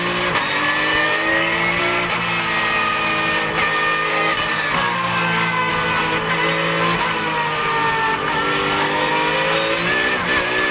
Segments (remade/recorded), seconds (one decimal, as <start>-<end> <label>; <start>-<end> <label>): 0.0-0.9 recorded; 0.9-1.8 remade; 1.8-4.1 recorded; 4.1-5.7 remade; 5.7-8.6 recorded; 8.6-9.1 remade; 9.1-10.7 recorded